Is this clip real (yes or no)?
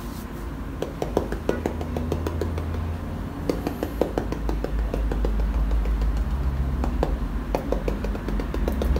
yes